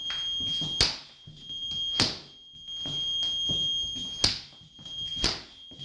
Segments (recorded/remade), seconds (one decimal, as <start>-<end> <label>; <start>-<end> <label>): 0.0-5.8 recorded